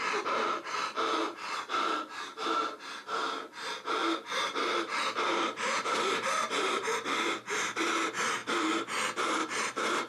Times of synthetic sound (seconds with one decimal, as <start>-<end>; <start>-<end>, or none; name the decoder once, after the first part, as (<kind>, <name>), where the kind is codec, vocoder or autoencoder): 0.0-8.4 (vocoder, BigVGAN v2); 9.2-10.1